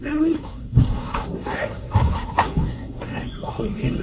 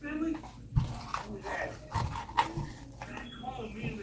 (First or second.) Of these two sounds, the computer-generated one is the first